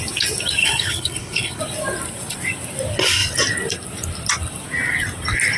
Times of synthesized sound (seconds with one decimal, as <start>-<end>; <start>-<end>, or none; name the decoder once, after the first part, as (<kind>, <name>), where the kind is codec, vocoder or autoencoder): 0.6-1.6 (codec, HILCodec)